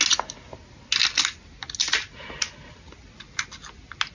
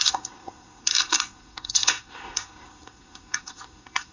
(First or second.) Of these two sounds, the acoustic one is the first